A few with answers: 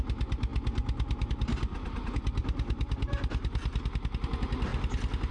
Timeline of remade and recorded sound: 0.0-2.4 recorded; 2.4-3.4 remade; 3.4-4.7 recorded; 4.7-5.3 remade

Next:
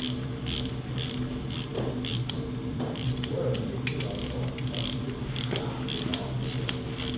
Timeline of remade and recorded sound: 0.0-1.7 recorded; 1.7-3.7 remade; 3.7-7.2 recorded

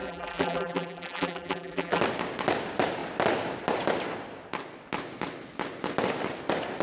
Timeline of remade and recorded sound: 0.0-2.0 remade; 2.0-6.8 recorded

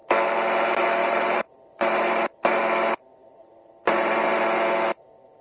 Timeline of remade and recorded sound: 0.0-1.0 recorded; 1.0-2.6 remade; 2.6-3.1 recorded; 3.1-4.4 remade; 4.4-5.4 recorded

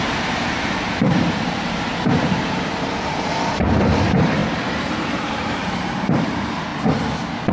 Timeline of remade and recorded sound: 0.0-6.7 remade; 6.7-7.5 recorded

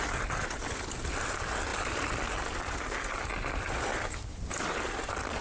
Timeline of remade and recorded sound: 0.0-3.9 recorded; 3.9-5.0 remade; 5.0-5.4 recorded

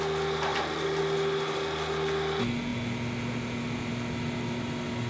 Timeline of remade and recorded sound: 0.0-0.5 recorded; 0.5-1.0 remade; 1.0-5.1 recorded